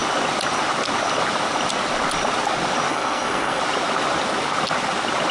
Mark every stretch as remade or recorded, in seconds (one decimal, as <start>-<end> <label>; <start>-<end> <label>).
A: 0.0-2.9 recorded; 2.9-3.6 remade; 3.6-5.3 recorded